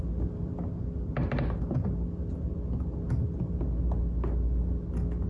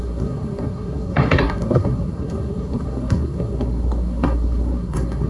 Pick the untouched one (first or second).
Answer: first